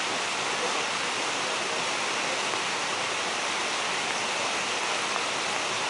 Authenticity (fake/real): real